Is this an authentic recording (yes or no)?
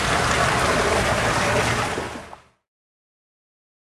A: yes